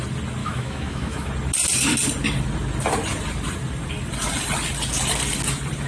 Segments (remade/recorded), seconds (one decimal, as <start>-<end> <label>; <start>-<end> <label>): 0.0-0.4 recorded; 0.4-1.3 remade; 1.3-5.9 recorded